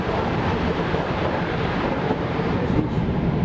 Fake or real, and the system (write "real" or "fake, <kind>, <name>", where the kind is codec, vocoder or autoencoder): fake, vocoder, BigVGAN v2